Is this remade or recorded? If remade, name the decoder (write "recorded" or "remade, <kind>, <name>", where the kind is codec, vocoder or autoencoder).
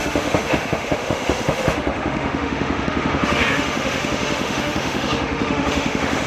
remade, autoencoder, DAC-VAE